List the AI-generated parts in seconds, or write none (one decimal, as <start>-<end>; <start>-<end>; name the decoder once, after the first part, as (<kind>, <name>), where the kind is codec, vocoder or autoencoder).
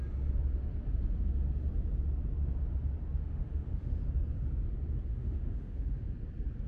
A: 3.2-4.0 (autoencoder, DAC-VAE); 5.1-6.1